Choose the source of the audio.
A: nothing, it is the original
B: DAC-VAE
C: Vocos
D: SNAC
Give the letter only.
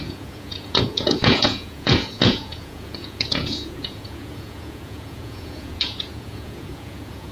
C